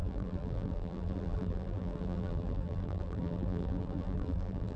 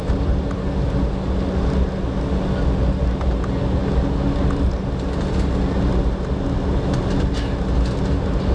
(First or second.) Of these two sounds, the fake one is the first